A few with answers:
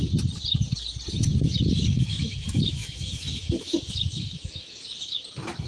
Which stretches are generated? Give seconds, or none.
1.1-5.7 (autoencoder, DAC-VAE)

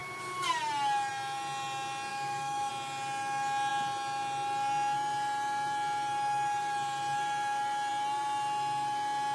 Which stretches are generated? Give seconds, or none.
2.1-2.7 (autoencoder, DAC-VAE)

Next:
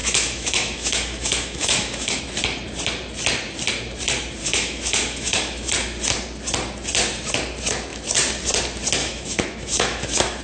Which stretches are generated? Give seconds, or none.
0.0-2.2 (autoencoder, DAC-VAE); 4.4-5.7; 9.0-10.4

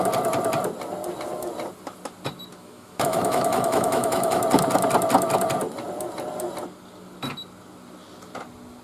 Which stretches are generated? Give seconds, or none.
2.6-4.4 (autoencoder, DAC-VAE)